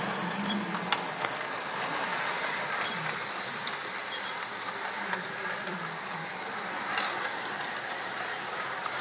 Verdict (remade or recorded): remade